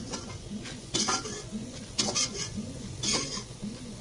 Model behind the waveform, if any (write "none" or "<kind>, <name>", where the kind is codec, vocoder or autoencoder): vocoder, Vocos